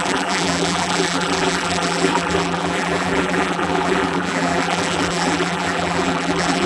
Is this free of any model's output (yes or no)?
no